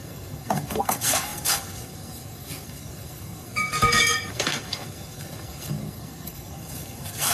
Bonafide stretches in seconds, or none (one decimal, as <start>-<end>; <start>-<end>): none